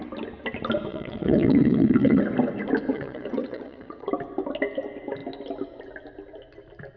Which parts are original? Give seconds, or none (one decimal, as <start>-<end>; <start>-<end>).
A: 0.0-0.9; 2.2-2.9; 4.1-7.0